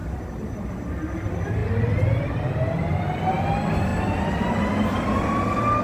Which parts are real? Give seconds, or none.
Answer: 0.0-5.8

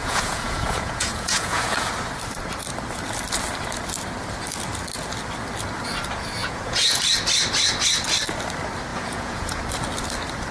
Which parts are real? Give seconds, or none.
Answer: 1.9-6.4; 7.0-8.9; 9.6-10.5

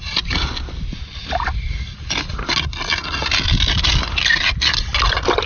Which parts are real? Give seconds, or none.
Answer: 0.0-5.5

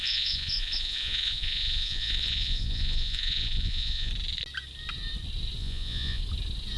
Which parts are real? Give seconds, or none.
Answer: 4.1-5.6; 6.2-6.8

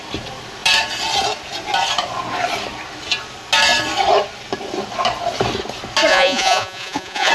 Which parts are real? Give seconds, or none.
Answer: 0.0-6.1